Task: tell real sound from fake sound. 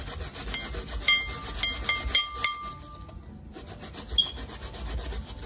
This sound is real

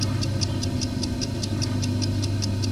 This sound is real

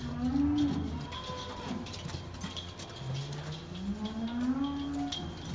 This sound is real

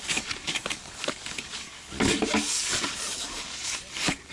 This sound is fake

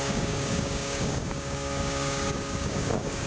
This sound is fake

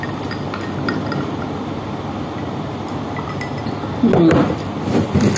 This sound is real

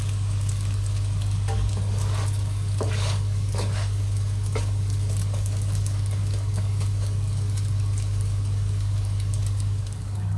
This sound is fake